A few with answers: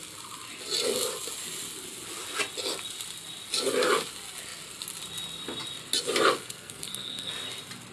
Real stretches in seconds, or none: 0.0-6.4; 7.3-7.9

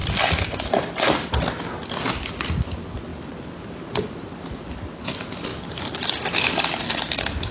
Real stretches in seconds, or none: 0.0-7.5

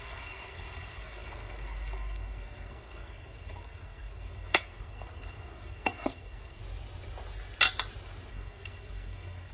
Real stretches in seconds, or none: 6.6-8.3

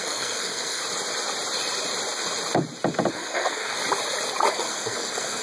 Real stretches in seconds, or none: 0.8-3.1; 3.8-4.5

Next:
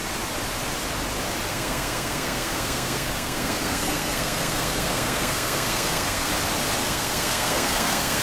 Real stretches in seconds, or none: 0.0-1.5; 6.3-6.8